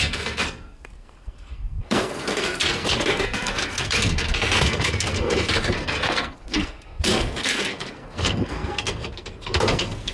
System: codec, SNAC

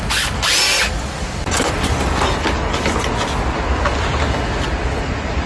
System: none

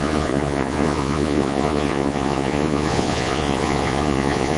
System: vocoder, Vocos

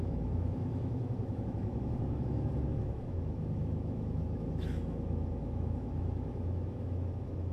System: autoencoder, DAC-VAE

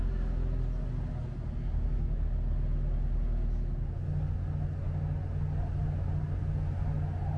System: none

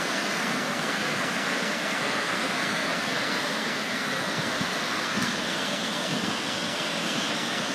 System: codec, SNAC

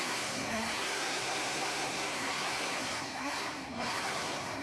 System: codec, SNAC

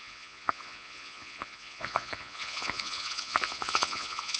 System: vocoder, Vocos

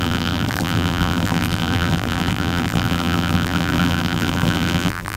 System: vocoder, BigVGAN v2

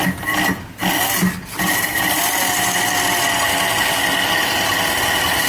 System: none